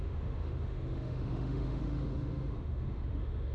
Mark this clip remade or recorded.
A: remade